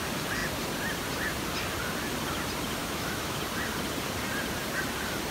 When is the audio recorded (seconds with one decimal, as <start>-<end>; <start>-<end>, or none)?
0.0-2.8; 3.4-5.3